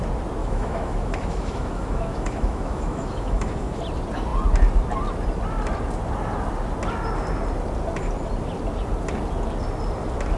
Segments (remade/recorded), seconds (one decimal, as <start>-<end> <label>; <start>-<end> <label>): 0.0-0.4 recorded; 0.4-3.8 remade; 3.8-10.4 recorded